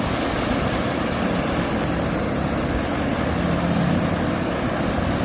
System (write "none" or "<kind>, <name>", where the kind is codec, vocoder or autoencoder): none